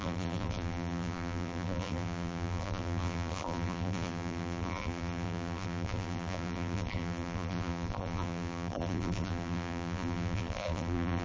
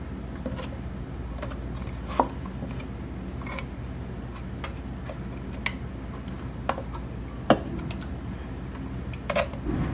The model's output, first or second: first